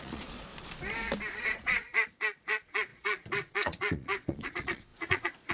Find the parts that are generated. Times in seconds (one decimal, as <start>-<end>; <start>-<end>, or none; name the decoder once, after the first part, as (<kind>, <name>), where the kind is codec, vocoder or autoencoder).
0.0-0.5 (vocoder, Vocos); 1.4-5.5